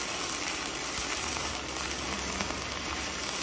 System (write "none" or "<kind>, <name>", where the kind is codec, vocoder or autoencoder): none